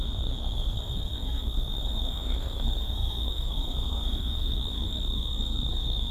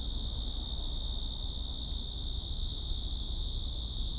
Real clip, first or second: second